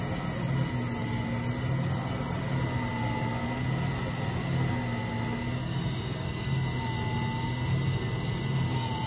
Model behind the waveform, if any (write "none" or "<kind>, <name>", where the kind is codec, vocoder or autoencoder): none